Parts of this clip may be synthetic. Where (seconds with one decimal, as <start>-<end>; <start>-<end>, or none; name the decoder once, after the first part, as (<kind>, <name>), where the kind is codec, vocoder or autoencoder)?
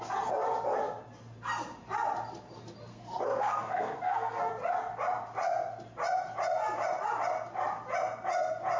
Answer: 2.9-4.5 (codec, SNAC)